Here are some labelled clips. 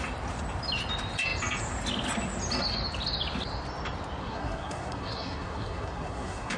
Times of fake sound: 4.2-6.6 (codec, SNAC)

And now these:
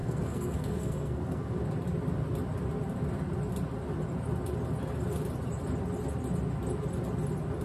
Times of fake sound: 0.0-1.6 (codec, SNAC)

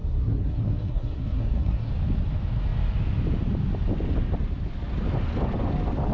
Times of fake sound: 0.0-1.9 (codec, SNAC)

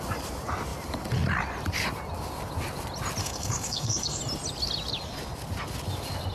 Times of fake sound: 3.2-4.2 (codec, SNAC)

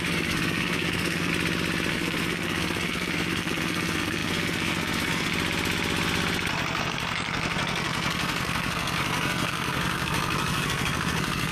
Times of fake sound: 0.0-1.3 (codec, SNAC); 1.9-5.3; 6.8-11.5

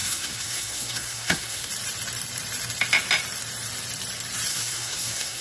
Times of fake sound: 0.0-1.7 (codec, SNAC); 4.5-5.4

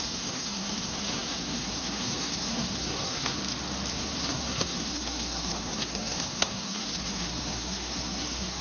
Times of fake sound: 0.0-3.4 (codec, SNAC); 3.9-8.6